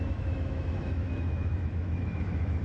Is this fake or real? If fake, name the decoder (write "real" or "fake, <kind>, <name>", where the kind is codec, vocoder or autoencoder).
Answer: fake, autoencoder, DAC-VAE